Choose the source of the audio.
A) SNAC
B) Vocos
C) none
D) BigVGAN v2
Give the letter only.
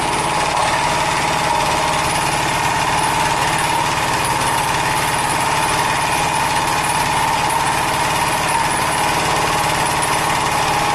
C